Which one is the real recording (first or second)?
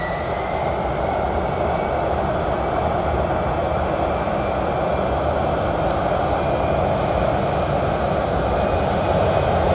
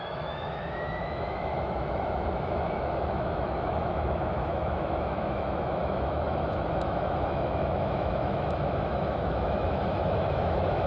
first